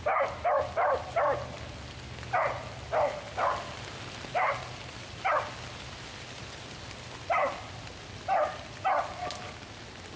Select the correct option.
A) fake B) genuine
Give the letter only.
B